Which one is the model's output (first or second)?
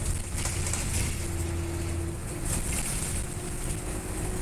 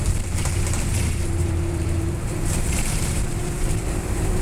second